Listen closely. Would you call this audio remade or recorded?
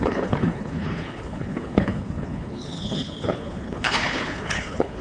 remade